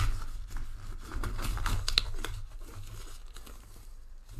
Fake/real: real